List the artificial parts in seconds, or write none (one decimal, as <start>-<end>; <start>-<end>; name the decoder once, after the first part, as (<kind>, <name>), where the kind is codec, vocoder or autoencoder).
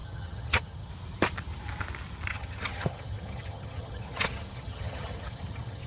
0.0-0.9 (vocoder, HiFi-GAN); 2.3-5.9